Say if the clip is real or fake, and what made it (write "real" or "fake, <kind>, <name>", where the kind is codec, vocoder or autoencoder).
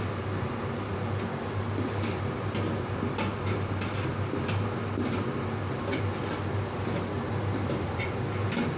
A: real